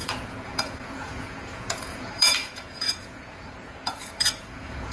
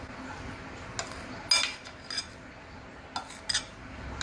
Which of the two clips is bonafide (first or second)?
second